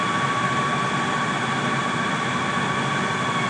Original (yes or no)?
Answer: yes